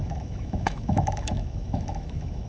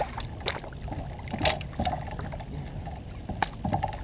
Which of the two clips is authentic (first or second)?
second